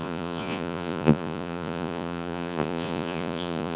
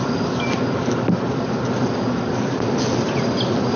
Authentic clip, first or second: second